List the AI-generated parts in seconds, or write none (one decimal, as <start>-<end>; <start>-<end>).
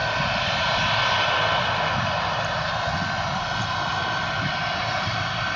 none